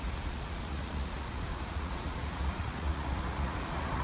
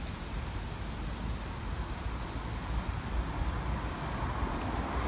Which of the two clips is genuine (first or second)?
second